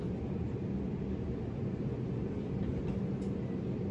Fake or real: real